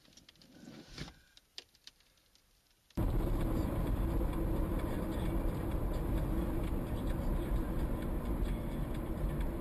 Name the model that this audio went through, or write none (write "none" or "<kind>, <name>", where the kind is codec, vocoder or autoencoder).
vocoder, BigVGAN v2